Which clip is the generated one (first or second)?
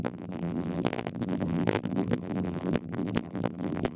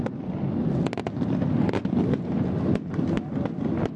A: first